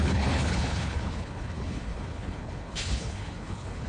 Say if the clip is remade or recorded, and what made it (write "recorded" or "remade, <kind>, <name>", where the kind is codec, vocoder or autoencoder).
remade, codec, HILCodec